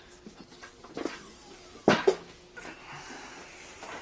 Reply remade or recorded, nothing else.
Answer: recorded